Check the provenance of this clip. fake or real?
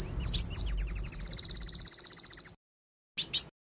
real